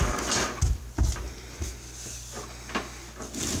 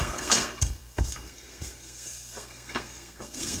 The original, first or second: first